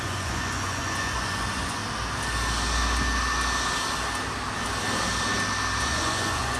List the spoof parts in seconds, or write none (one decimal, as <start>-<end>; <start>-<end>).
0.0-1.8; 5.8-6.6